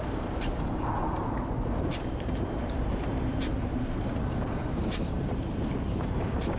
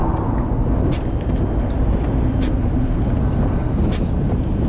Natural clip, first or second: second